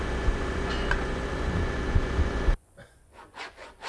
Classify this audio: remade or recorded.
remade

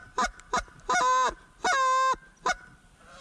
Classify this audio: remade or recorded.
recorded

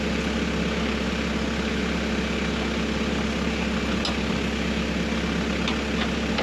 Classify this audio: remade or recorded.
recorded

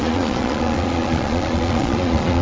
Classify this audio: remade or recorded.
remade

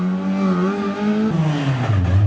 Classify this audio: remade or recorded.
recorded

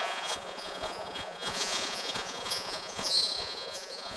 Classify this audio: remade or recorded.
remade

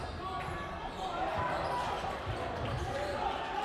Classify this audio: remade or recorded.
remade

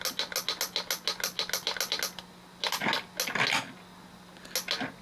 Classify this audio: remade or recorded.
recorded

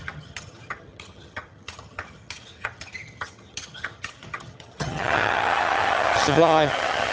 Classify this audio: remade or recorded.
remade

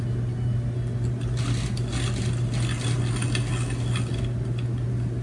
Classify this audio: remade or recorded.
recorded